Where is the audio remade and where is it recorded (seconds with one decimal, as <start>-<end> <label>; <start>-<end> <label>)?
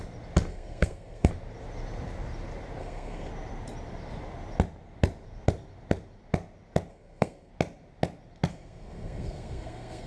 0.0-0.5 recorded; 0.5-1.3 remade; 1.3-2.8 recorded; 2.8-3.3 remade; 3.3-6.9 recorded; 6.9-7.5 remade; 7.5-8.5 recorded; 8.5-10.1 remade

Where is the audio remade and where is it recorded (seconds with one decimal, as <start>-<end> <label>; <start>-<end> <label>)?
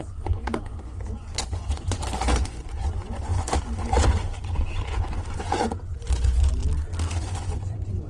0.0-6.6 remade; 6.6-7.2 recorded; 7.2-8.1 remade